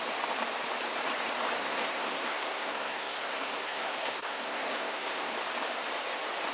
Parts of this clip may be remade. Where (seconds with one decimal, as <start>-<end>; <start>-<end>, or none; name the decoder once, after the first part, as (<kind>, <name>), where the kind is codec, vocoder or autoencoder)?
1.6-5.3 (codec, SNAC)